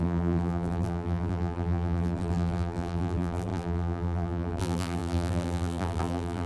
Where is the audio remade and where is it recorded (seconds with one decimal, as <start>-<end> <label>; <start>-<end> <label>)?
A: 0.0-6.5 remade